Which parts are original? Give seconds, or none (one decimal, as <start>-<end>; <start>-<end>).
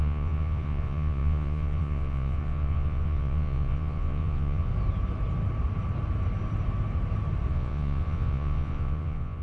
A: 4.7-7.5